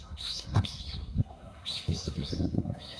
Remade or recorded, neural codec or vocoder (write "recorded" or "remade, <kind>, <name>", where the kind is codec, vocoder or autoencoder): remade, codec, SNAC